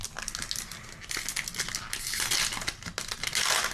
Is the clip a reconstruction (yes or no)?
no